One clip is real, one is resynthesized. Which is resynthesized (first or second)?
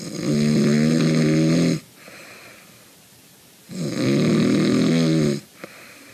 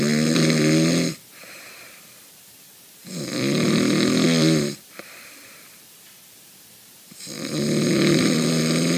second